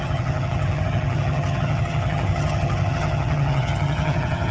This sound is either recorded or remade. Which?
remade